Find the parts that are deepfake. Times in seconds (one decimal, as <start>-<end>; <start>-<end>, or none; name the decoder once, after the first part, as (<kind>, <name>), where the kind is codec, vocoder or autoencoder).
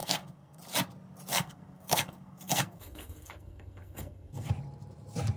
0.0-0.6 (codec, SNAC); 1.3-4.5